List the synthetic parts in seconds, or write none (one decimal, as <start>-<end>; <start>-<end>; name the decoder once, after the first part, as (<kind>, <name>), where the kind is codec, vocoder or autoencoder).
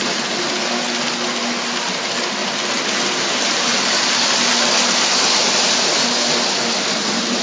none